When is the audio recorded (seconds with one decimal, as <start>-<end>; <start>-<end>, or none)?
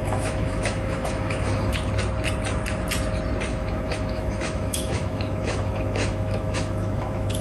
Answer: 1.9-3.5